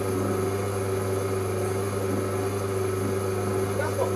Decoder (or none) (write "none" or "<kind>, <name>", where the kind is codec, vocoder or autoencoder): none